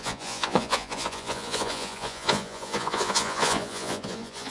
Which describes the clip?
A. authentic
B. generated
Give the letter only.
B